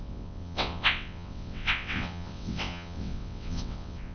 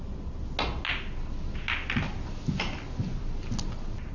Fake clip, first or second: first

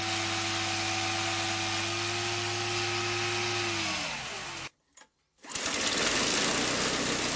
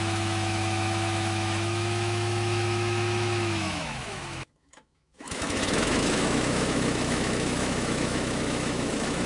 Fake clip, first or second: second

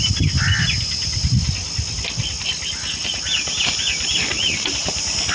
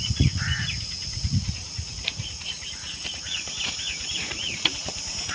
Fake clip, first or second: second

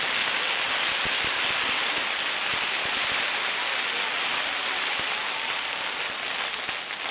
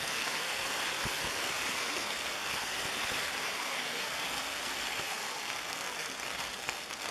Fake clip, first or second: second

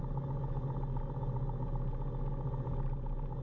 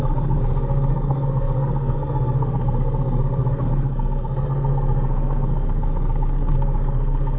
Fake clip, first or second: second